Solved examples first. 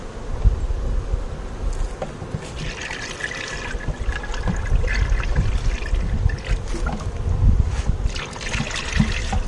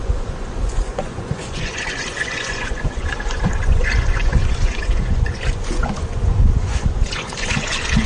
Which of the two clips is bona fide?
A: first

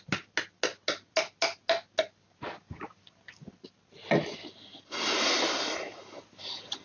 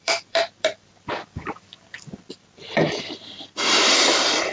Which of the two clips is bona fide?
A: first